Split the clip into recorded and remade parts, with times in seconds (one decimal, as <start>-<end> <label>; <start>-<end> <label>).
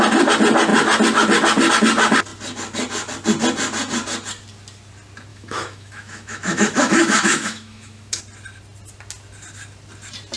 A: 0.0-5.3 recorded; 5.3-8.2 remade; 8.2-10.4 recorded